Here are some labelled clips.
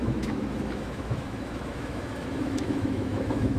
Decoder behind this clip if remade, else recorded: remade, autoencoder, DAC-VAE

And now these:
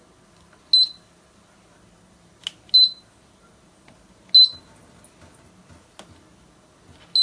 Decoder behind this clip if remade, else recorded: recorded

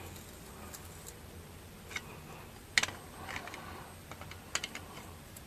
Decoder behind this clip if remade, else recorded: recorded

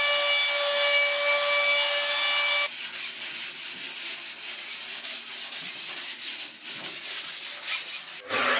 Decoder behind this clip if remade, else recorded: recorded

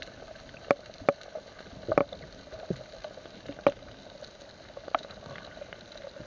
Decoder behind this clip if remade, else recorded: recorded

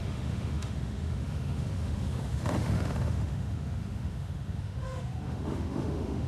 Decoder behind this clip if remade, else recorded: remade, autoencoder, DAC-VAE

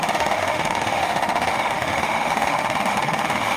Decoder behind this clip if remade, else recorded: remade, autoencoder, DAC-VAE